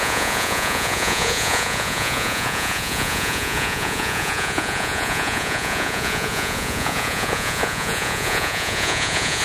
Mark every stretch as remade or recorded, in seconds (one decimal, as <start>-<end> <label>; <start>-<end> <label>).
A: 0.0-9.4 remade